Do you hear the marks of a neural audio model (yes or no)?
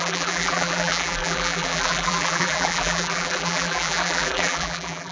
yes